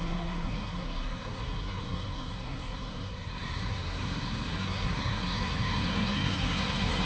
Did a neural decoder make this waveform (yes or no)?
yes